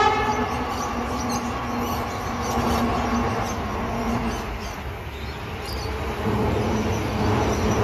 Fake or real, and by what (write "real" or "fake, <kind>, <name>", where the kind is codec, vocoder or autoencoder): real